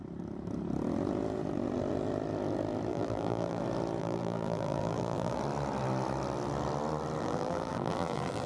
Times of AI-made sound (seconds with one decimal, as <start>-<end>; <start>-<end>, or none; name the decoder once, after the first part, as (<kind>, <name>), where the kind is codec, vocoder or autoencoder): 2.9-3.6 (vocoder, BigVGAN v2); 4.0-5.4; 7.2-8.5